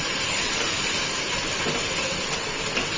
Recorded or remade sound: recorded